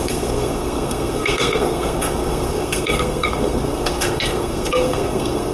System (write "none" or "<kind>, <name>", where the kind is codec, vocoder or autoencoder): codec, SNAC